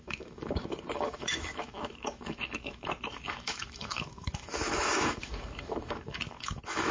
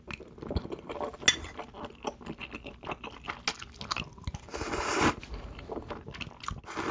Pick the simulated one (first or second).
first